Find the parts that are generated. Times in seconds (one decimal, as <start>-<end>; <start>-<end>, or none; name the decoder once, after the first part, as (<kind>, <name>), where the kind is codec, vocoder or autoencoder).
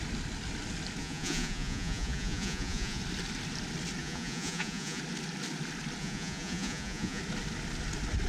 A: 1.0-3.0 (vocoder, Vocos); 4.0-5.0; 6.0-7.2